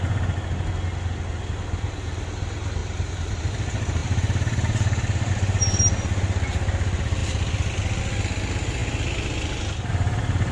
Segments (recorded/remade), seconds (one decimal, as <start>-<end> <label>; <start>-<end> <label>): 0.0-2.8 recorded; 2.8-3.4 remade; 3.4-4.0 recorded; 4.0-5.3 remade; 5.3-10.5 recorded